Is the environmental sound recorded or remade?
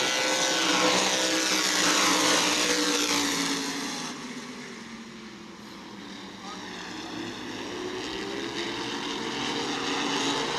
recorded